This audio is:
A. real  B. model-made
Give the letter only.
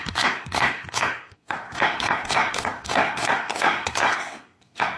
B